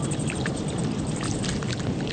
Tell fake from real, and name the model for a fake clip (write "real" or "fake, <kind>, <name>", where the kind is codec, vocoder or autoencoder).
real